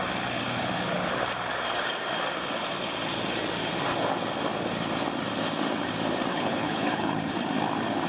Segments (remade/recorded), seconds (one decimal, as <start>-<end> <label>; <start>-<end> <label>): 0.0-6.3 recorded; 6.3-7.5 remade; 7.5-8.1 recorded